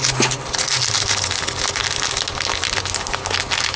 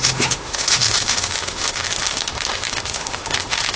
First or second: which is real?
first